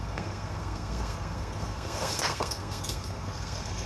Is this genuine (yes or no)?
no